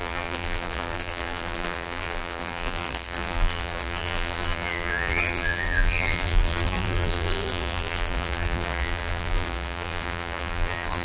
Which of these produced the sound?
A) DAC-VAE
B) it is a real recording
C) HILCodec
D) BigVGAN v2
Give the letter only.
D